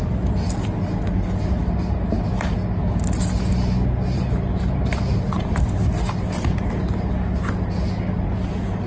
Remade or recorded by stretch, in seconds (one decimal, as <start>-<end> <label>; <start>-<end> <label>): 0.0-8.9 recorded